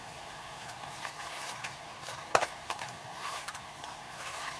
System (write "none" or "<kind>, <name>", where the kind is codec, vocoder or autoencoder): codec, SNAC